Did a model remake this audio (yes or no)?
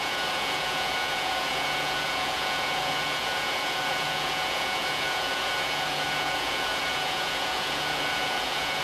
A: yes